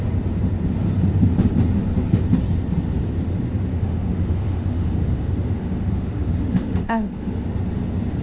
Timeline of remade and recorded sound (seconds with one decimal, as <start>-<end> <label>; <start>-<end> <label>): 0.0-3.7 recorded; 3.7-7.4 remade; 7.4-8.2 recorded